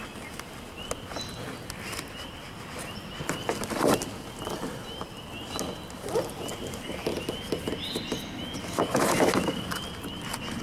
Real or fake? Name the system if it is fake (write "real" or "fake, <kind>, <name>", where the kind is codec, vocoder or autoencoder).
real